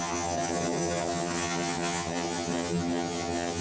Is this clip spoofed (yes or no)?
yes